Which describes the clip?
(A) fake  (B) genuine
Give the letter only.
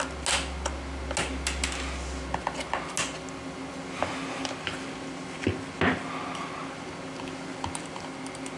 B